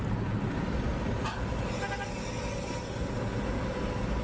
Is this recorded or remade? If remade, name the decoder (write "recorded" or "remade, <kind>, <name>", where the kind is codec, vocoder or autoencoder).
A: recorded